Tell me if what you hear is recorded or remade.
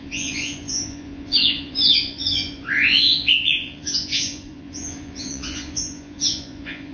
remade